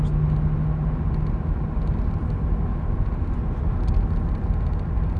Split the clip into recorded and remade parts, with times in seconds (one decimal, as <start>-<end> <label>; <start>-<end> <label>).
0.0-5.2 recorded